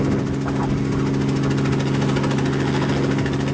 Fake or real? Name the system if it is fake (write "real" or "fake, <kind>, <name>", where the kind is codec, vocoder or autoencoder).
real